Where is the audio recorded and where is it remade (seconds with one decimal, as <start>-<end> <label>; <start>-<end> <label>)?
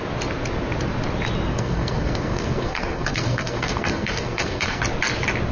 0.0-1.5 recorded; 1.5-4.8 remade; 4.8-5.5 recorded